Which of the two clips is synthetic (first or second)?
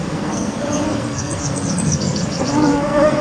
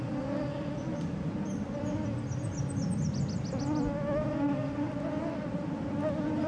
first